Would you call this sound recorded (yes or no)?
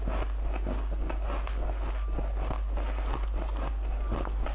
yes